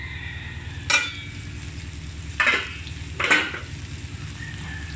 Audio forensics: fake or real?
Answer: real